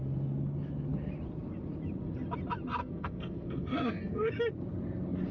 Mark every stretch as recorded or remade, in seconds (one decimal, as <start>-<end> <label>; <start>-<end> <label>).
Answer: 0.0-2.8 recorded; 2.8-4.4 remade; 4.4-5.3 recorded